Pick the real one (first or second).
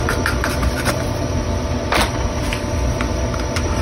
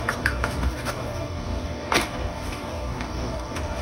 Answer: first